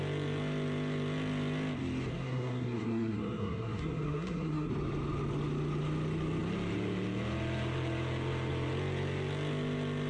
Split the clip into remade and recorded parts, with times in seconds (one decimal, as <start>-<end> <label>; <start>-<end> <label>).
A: 0.0-2.1 recorded; 2.1-4.7 remade; 4.7-10.1 recorded